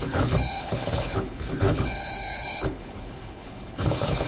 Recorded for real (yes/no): no